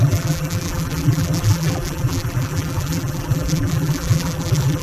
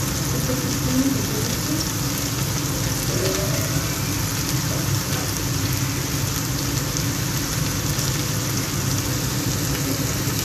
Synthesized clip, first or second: first